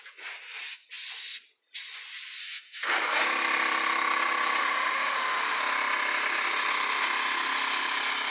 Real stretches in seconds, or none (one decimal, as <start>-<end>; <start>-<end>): 0.0-2.4; 3.2-4.6; 5.6-8.3